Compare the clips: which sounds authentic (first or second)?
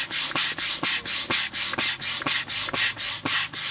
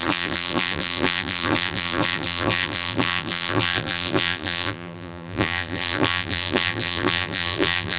first